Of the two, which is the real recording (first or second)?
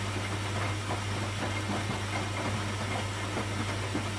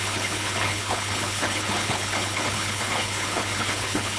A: first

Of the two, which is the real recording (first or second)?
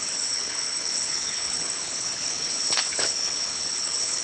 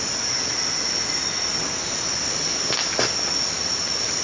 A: second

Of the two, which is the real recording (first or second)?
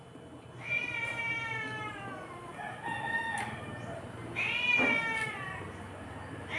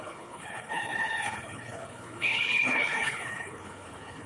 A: first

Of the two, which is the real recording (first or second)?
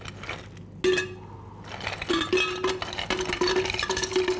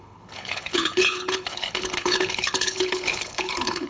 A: first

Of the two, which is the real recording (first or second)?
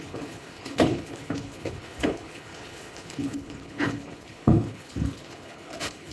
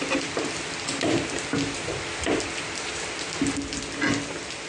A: second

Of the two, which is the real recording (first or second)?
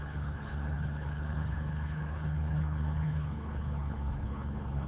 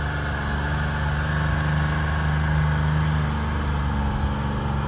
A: second